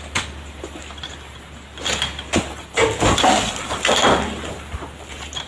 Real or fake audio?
real